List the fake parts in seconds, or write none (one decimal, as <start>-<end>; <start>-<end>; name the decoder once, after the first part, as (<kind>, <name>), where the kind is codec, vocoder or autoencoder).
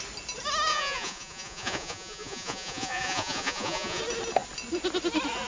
0.7-4.0 (vocoder, Vocos)